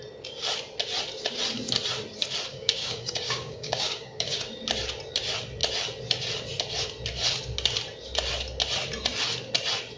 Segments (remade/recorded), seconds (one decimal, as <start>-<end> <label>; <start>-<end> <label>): 0.0-2.5 recorded; 2.5-4.5 remade; 4.5-10.0 recorded